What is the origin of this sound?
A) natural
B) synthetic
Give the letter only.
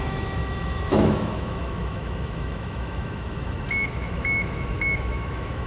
B